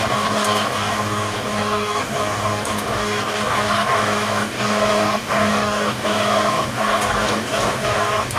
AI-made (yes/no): yes